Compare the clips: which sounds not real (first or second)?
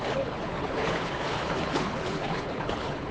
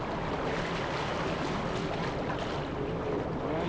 first